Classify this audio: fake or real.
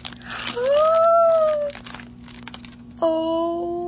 real